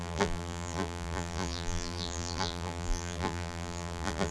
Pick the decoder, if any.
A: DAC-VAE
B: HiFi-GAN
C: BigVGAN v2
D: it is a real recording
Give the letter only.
C